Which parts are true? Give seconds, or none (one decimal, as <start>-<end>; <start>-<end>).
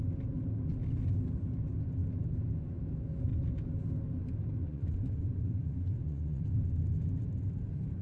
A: 0.0-4.6; 6.4-8.0